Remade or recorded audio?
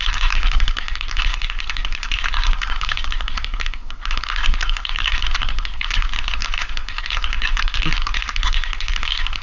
remade